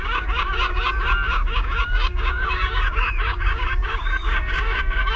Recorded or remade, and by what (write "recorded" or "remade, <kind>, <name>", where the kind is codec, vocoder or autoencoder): remade, codec, DAC